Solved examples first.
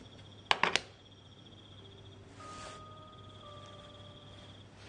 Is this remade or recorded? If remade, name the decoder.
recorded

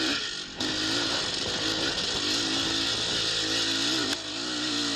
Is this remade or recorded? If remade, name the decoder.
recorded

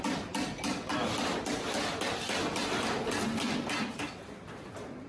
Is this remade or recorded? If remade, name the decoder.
recorded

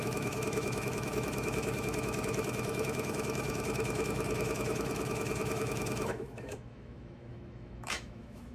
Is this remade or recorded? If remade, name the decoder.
remade, autoencoder, DAC-VAE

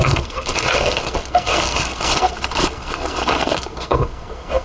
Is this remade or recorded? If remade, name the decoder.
remade, codec, SNAC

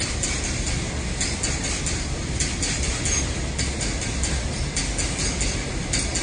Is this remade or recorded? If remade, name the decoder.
recorded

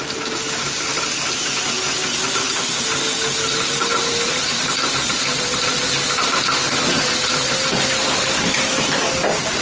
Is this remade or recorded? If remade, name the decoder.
recorded